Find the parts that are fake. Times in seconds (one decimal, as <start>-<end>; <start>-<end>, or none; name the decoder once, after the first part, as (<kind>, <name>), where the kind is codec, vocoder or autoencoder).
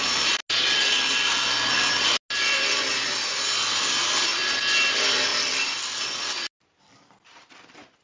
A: none